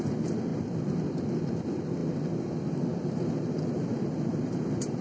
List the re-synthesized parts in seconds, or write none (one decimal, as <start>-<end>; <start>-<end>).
none